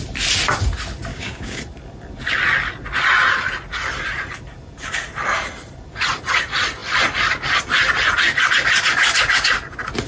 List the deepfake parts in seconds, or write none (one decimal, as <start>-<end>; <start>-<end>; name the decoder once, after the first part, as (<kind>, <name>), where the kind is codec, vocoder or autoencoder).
1.1-1.6 (codec, DAC)